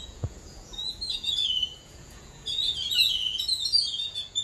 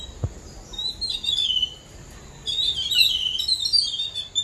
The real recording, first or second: second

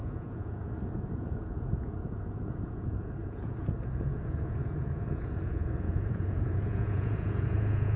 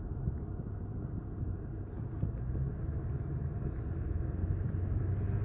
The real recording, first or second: second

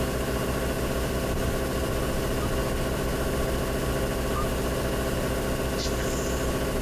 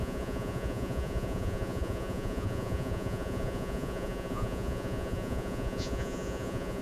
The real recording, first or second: first